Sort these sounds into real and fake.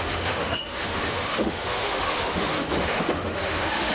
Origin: fake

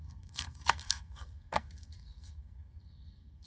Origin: fake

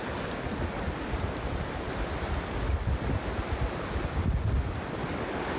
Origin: real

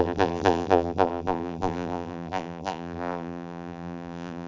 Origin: fake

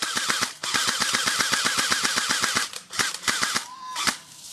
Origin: fake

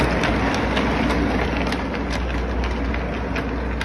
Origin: real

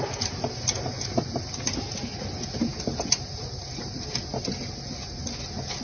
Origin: real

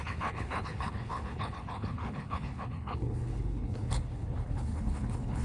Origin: fake